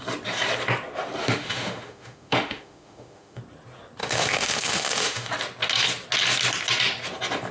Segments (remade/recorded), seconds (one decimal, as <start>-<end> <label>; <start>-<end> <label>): 0.0-1.2 recorded; 1.2-3.4 remade; 3.4-4.0 recorded; 4.0-5.3 remade; 5.3-7.5 recorded